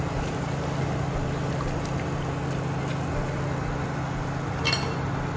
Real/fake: real